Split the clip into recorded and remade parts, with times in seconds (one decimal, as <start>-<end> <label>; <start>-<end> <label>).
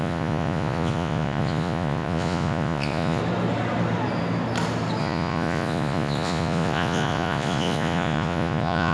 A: 0.0-3.2 remade; 3.2-5.0 recorded; 5.0-8.9 remade